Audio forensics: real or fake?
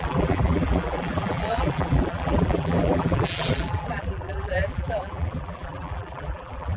fake